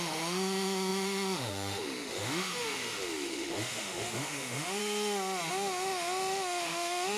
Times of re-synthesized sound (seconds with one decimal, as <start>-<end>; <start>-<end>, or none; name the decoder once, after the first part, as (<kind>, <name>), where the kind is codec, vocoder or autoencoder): 0.0-4.8 (autoencoder, DAC-VAE); 5.5-7.2